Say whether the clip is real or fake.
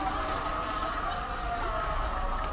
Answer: real